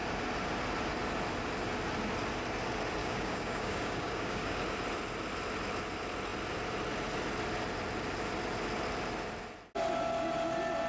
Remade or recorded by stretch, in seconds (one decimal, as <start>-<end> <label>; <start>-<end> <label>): 0.0-3.0 recorded; 3.0-4.6 remade; 4.6-10.9 recorded